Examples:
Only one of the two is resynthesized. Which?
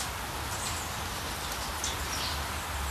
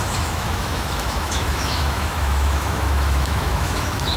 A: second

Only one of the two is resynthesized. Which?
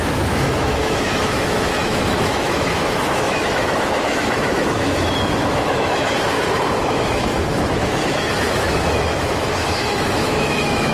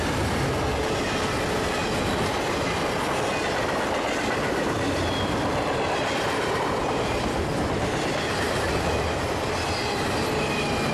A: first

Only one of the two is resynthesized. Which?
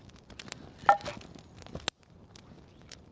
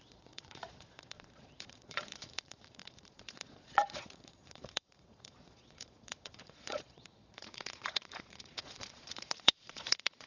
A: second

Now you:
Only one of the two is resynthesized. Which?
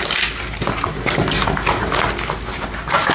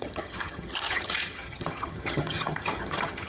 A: second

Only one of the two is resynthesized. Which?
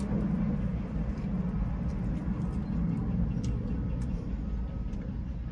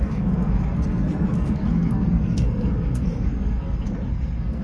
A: second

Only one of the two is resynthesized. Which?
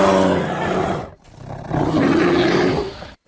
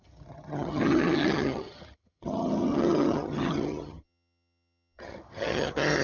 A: second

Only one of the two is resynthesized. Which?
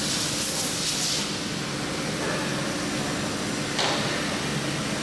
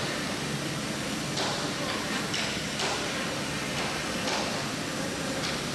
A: second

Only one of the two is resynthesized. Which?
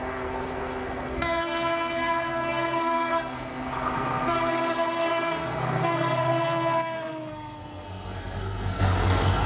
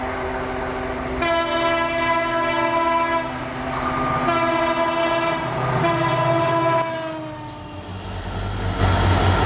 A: first